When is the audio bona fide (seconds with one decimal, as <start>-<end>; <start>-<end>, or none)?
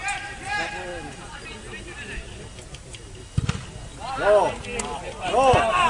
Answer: 0.0-5.9